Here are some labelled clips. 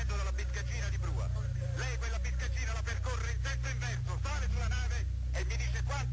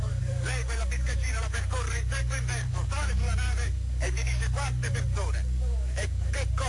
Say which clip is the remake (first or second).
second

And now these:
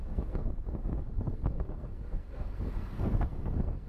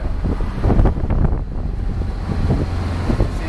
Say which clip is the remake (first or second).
first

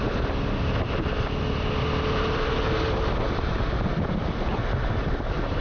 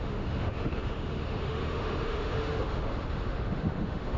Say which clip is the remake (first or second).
second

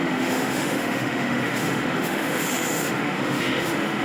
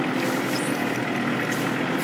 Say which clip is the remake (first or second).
first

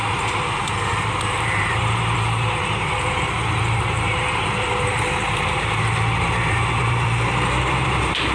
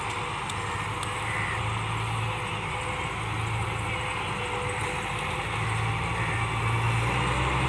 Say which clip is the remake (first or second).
first